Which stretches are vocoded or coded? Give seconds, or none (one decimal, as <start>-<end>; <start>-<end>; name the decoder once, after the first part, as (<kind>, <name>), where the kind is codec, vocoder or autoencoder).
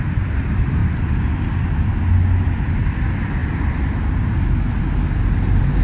none